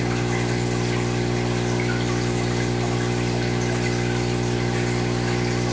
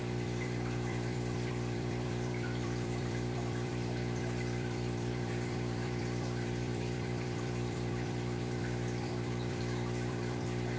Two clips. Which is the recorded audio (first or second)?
first